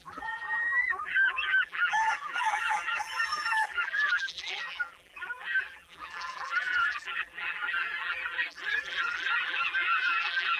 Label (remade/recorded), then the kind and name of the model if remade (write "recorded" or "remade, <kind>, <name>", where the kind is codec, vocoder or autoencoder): remade, vocoder, BigVGAN v2